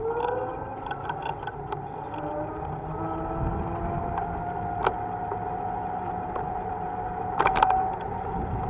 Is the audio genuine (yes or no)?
yes